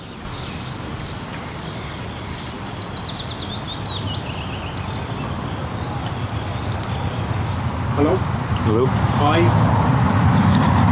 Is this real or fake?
real